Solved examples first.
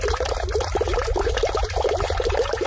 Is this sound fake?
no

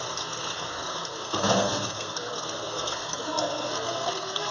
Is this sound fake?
yes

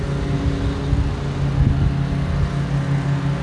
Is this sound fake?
no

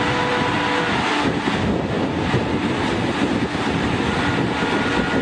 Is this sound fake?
no